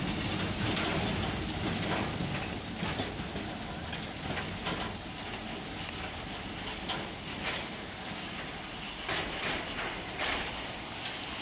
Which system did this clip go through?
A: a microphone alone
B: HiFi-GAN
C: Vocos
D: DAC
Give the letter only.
A